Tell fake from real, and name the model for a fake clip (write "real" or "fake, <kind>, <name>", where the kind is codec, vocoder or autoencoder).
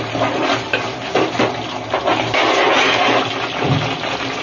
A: real